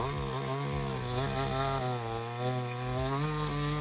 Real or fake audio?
real